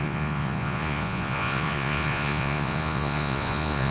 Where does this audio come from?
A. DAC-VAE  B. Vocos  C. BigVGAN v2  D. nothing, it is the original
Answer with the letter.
B